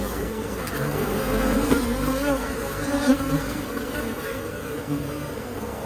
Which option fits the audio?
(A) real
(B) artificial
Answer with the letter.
B